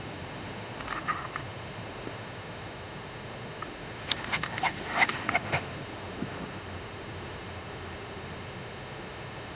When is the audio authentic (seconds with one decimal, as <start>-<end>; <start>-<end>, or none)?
none